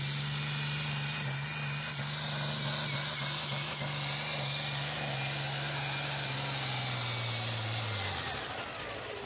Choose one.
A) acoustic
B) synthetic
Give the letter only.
A